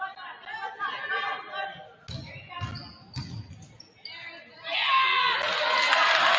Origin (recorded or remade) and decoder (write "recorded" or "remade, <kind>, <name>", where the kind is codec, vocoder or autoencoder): recorded